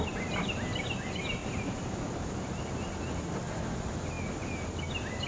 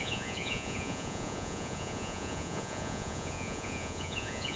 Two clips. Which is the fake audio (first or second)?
second